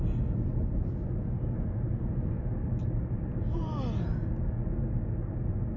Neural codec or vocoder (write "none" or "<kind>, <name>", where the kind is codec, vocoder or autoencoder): none